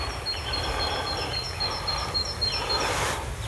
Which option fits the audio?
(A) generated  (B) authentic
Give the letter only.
B